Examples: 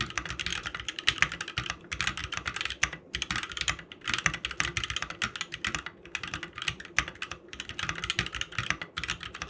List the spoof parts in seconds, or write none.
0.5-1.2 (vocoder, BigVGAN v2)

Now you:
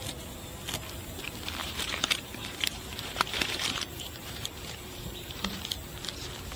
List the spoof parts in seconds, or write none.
1.6-5.6 (vocoder, BigVGAN v2)

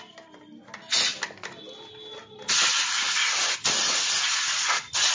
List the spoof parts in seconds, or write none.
none

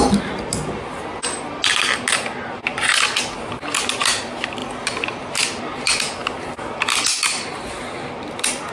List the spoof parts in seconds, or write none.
4.6-5.6 (vocoder, BigVGAN v2)

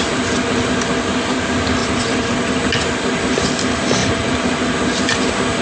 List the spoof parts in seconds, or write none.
1.8-2.6 (vocoder, BigVGAN v2); 4.0-4.6

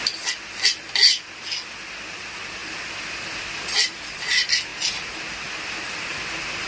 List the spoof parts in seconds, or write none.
2.6-3.4 (vocoder, BigVGAN v2)

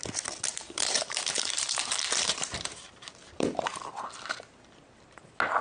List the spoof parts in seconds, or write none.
0.5-3.9 (vocoder, BigVGAN v2)

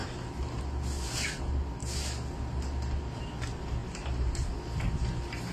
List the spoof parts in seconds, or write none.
0.0-0.6 (vocoder, BigVGAN v2); 3.8-4.5